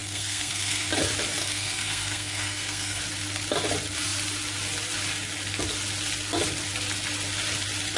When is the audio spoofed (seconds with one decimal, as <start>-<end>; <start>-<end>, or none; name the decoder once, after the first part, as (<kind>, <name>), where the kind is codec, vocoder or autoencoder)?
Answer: 0.0-0.9 (codec, SNAC); 1.4-3.0